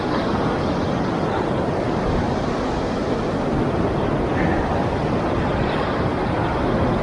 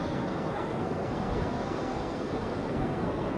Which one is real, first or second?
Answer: first